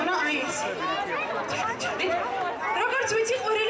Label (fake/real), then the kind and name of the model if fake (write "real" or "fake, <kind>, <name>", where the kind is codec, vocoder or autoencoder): real